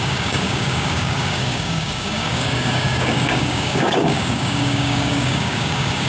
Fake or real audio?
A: fake